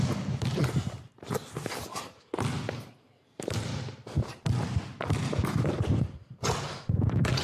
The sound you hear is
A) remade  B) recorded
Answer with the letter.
B